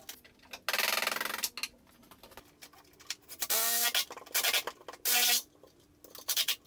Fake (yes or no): no